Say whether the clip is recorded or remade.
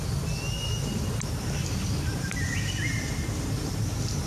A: recorded